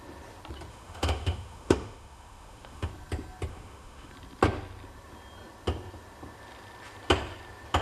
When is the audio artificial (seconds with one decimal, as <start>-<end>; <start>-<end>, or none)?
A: 0.7-2.9; 3.5-4.1